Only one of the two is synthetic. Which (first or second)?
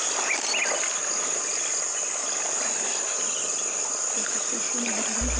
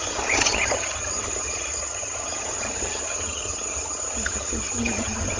second